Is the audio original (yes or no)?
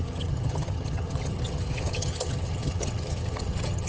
no